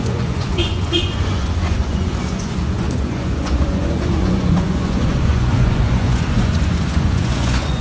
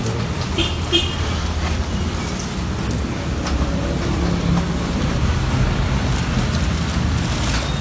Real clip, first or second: second